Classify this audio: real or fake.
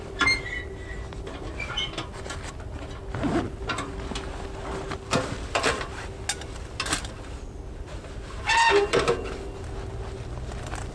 real